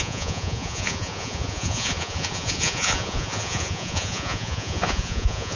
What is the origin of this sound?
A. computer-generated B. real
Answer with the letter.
A